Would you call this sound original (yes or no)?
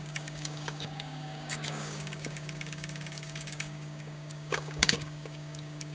no